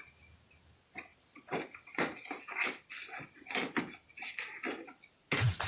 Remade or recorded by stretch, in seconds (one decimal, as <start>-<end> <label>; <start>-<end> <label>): 0.0-1.1 recorded; 1.1-3.8 remade; 3.8-5.7 recorded